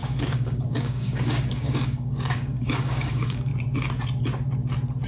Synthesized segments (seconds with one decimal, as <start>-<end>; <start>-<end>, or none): 0.0-3.5